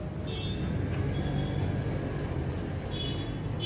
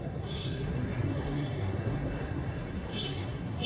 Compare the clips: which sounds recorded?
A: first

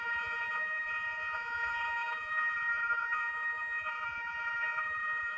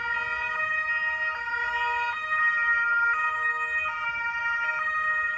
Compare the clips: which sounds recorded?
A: second